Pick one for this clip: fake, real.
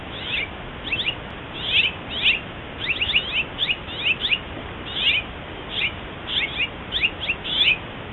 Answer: real